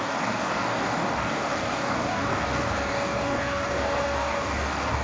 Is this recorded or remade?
remade